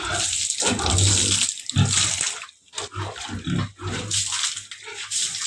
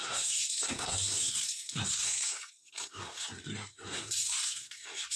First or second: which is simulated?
second